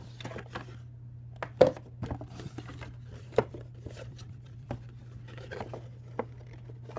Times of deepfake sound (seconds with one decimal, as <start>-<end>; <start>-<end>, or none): 2.7-5.0